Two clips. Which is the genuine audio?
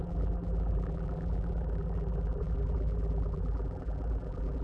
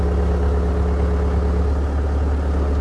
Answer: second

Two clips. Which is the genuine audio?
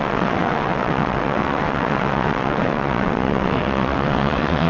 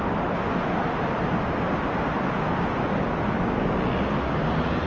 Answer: second